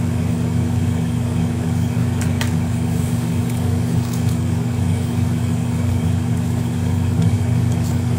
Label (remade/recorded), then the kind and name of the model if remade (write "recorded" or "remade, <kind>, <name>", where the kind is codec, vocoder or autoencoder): remade, codec, DAC